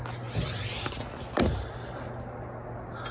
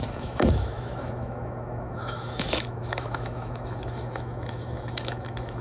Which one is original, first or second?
first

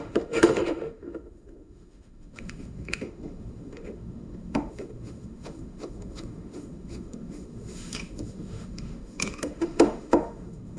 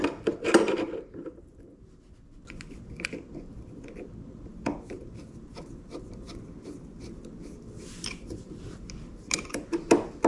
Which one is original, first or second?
second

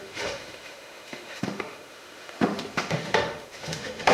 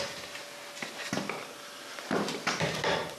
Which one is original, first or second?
second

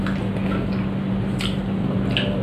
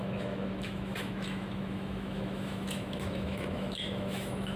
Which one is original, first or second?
first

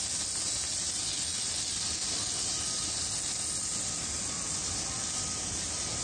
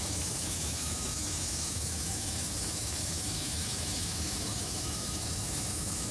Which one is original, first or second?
first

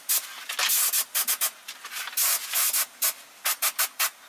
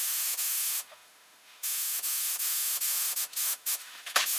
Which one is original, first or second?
first